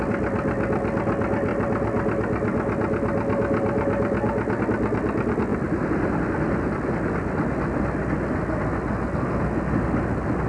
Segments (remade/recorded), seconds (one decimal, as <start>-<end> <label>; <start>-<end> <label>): 0.0-10.5 recorded